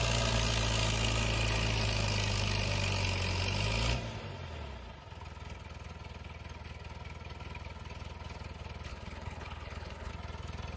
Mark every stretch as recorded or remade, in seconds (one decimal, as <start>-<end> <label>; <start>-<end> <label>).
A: 0.0-8.9 recorded; 8.9-10.1 remade; 10.1-10.8 recorded